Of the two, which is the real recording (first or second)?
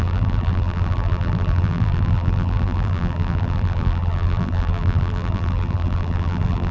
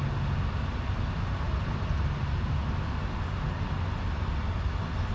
second